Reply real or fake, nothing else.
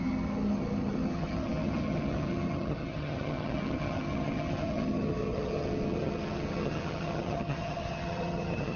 fake